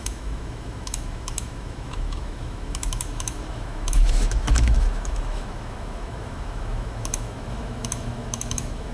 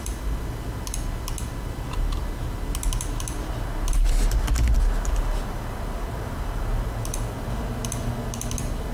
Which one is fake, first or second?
first